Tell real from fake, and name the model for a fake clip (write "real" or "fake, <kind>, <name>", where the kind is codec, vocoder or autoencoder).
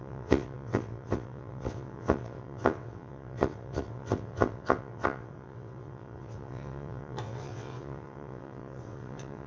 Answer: fake, vocoder, WaveNeXt